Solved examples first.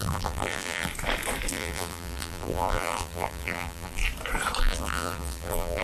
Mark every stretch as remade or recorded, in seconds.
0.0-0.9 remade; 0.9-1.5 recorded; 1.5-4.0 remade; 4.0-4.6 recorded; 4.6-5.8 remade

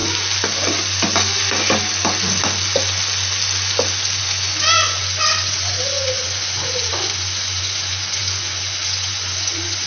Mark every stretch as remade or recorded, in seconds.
0.0-4.2 recorded; 4.2-9.9 remade

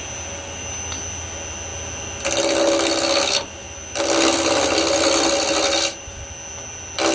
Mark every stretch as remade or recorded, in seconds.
0.0-7.1 recorded

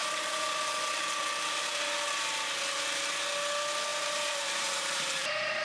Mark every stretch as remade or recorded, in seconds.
0.0-0.6 remade; 0.6-3.9 recorded; 3.9-5.6 remade

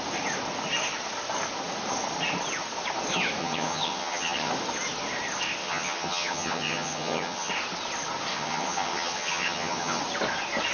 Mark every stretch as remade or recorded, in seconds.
0.0-3.4 recorded; 3.4-4.5 remade; 4.5-5.6 recorded; 5.6-7.5 remade; 7.5-8.3 recorded; 8.3-10.0 remade; 10.0-10.7 recorded